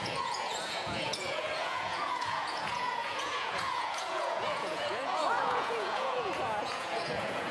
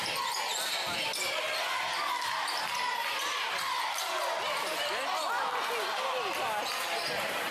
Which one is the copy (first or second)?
first